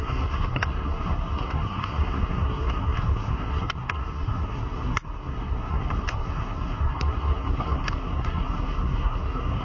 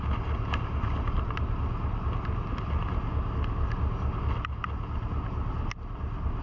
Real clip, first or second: second